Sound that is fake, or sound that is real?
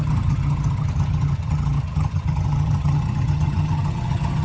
fake